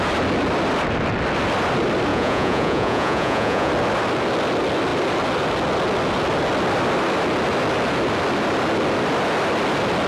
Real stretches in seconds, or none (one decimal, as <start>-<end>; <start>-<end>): 0.0-2.1; 3.7-10.1